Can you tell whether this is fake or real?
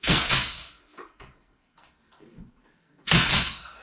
fake